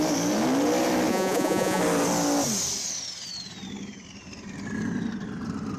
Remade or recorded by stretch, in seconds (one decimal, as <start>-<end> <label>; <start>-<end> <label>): 0.0-1.1 recorded; 1.1-1.8 remade; 1.8-5.8 recorded